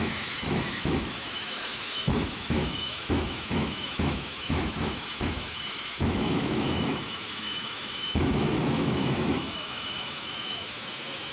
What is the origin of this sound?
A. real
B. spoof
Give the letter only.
B